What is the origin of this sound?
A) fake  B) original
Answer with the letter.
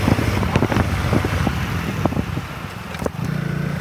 B